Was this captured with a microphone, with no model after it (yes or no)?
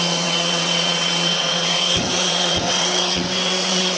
no